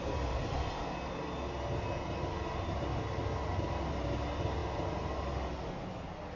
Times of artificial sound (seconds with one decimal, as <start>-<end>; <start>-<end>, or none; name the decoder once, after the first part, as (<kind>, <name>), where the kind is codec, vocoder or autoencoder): none